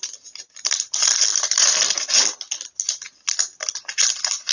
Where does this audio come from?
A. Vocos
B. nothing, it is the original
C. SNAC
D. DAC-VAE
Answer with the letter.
B